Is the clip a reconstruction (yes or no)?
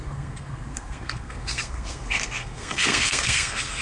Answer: yes